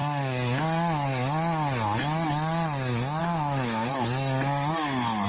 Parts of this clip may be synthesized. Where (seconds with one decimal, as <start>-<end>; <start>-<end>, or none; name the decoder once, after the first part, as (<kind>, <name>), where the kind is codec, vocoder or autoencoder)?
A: 3.2-3.9 (autoencoder, DAC-VAE)